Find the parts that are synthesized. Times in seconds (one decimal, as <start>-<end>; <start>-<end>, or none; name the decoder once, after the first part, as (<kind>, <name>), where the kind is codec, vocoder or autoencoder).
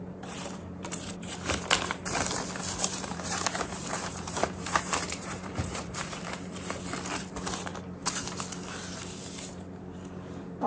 0.0-2.0 (vocoder, BigVGAN v2); 2.8-7.7; 9.6-10.7